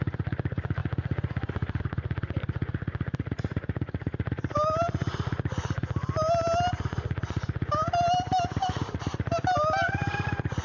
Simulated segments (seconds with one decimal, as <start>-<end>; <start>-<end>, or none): none

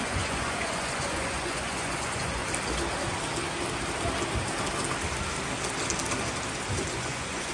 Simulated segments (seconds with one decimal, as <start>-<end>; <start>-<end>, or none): 0.0-2.4; 6.9-7.5

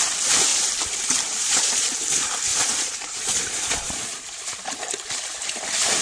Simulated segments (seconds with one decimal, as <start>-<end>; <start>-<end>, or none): 2.5-4.2

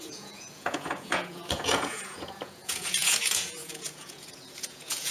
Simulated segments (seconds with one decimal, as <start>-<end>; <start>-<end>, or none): 0.0-5.1

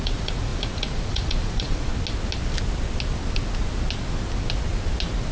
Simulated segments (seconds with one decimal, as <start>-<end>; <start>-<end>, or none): 0.0-1.9

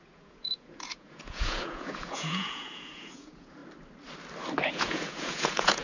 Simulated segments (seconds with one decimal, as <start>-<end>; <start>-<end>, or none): 0.0-3.6; 4.7-5.8

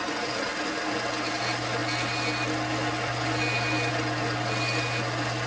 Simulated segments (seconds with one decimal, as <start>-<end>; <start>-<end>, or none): none

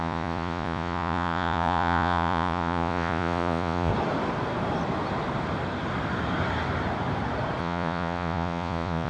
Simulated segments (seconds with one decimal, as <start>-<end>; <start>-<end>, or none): 0.0-3.9; 7.6-9.1